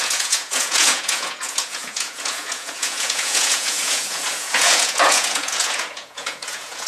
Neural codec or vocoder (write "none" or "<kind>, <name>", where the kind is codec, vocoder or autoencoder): vocoder, Vocos